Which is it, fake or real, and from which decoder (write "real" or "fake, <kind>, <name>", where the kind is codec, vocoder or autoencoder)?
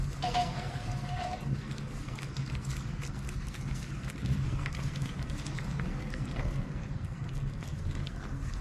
fake, codec, SNAC